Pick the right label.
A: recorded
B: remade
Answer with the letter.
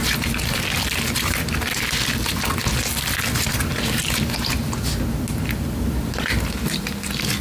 A